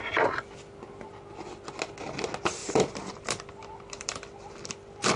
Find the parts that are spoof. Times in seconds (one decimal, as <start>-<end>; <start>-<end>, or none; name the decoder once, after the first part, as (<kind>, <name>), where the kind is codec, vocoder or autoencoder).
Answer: 2.6-4.7 (vocoder, BigVGAN v2)